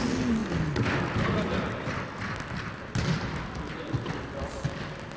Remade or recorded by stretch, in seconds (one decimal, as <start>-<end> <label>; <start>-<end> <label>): 0.0-5.2 recorded